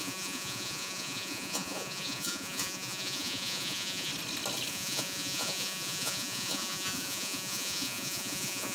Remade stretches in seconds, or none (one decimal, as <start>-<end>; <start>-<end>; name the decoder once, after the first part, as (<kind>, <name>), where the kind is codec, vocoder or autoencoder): 0.0-4.1 (vocoder, Vocos); 4.7-8.7